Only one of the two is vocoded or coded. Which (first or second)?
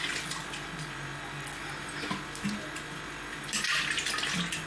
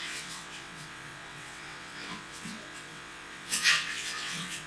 second